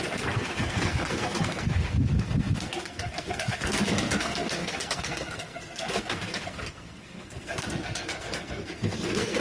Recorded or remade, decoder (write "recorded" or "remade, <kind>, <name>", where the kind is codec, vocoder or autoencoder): remade, codec, SNAC